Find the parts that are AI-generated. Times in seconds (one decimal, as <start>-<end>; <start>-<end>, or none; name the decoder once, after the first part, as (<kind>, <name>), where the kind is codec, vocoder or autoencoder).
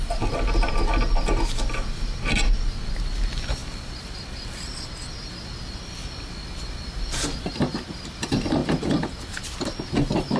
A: 3.6-4.7 (vocoder, BigVGAN v2); 8.6-9.6